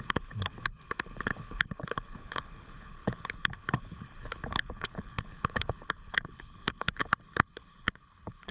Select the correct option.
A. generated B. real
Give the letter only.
A